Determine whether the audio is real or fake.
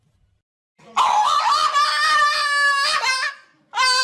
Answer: real